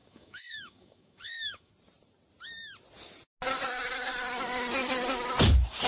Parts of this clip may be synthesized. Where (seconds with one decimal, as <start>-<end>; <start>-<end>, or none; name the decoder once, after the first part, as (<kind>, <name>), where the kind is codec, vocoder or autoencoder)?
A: 0.0-1.7 (autoencoder, DAC-VAE)